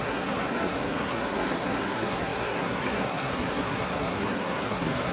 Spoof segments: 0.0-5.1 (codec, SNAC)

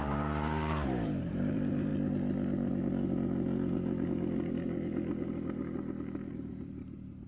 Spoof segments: 0.0-1.9 (vocoder, BigVGAN v2); 6.3-7.3

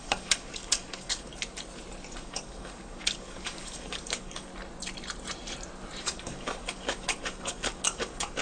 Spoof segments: 0.0-1.3 (codec, DAC); 2.2-4.5; 6.0-8.4

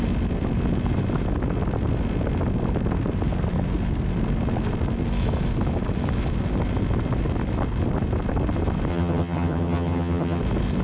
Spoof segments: 8.9-10.4 (vocoder, HiFi-GAN)

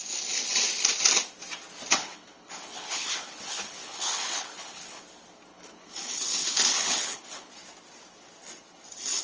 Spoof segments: 2.0-5.0 (codec, HILCodec); 5.5-7.5

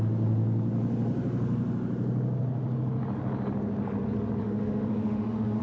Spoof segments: 4.4-5.6 (autoencoder, DAC-VAE)

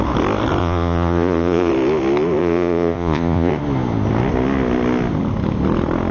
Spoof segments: 0.6-1.7 (vocoder, Vocos); 2.4-3.5